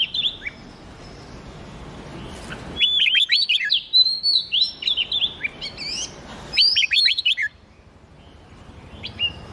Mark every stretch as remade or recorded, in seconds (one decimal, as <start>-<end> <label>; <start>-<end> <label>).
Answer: 0.0-9.5 recorded